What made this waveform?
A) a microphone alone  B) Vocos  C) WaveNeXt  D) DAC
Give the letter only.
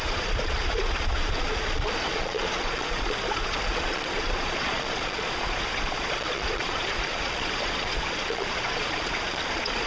B